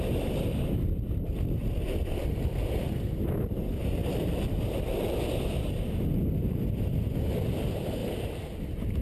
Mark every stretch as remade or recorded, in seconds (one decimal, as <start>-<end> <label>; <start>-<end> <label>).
0.0-4.0 recorded; 4.0-5.1 remade; 5.1-8.0 recorded; 8.0-9.0 remade